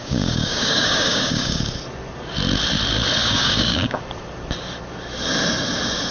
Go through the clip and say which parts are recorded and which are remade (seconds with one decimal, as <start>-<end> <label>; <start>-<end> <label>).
0.0-1.6 remade; 1.6-3.2 recorded; 3.2-4.0 remade; 4.0-6.1 recorded